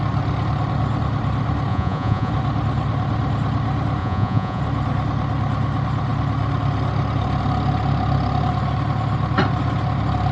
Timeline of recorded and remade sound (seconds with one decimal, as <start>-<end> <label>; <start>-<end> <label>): 0.0-1.7 recorded; 1.7-2.3 remade; 2.3-4.0 recorded; 4.0-4.6 remade; 4.6-10.3 recorded